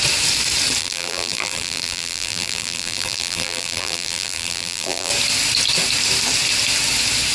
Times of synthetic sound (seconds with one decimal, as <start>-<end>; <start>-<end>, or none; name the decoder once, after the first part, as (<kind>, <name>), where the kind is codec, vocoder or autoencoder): 0.8-5.1 (vocoder, BigVGAN v2)